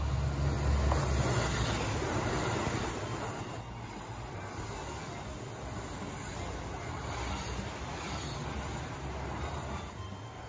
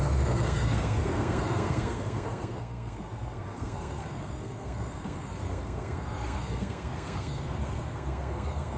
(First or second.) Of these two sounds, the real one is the first